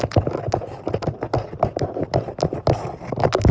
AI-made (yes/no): no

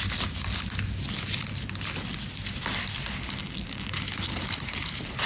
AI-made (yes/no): no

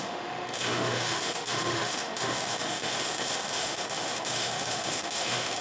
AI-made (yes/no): yes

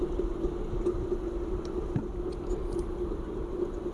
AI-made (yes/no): no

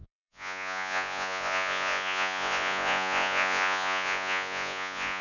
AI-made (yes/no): yes